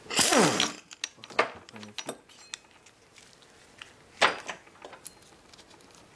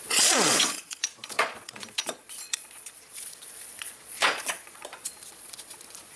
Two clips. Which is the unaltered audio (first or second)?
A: first